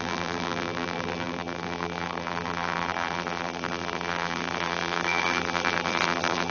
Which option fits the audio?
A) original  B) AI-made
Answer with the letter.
B